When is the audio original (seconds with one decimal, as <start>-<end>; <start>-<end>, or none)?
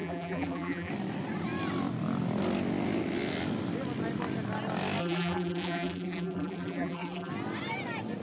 0.9-5.0; 7.3-8.2